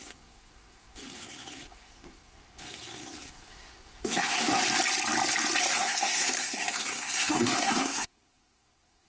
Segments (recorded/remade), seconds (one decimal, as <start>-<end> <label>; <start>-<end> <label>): 0.0-4.6 remade; 4.6-5.6 recorded; 5.6-9.1 remade